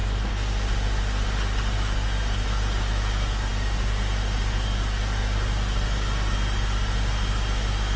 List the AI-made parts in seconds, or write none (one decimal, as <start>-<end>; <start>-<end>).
none